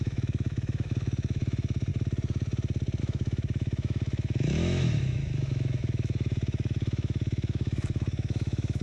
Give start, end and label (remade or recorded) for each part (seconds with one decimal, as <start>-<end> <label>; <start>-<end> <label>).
0.0-1.9 remade; 1.9-3.0 recorded; 3.0-8.8 remade